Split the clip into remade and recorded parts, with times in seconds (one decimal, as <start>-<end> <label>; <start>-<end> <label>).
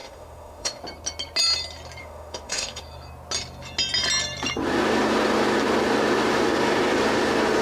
0.0-0.8 remade; 0.8-2.0 recorded; 2.0-2.8 remade; 2.8-7.6 recorded